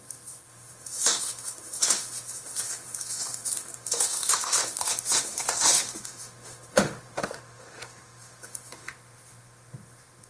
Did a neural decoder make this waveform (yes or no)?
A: yes